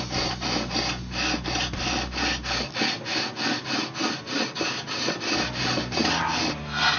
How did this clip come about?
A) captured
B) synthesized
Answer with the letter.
A